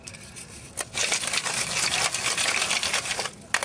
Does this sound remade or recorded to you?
recorded